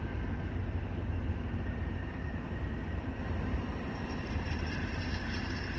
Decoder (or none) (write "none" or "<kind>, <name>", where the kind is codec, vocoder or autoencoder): vocoder, BigVGAN v2